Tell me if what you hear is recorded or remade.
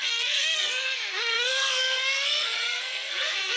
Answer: remade